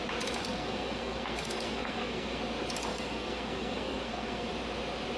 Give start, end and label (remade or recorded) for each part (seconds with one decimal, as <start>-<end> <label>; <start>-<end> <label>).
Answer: 0.0-0.4 recorded; 0.4-2.4 remade; 2.4-2.9 recorded; 2.9-4.5 remade; 4.5-5.2 recorded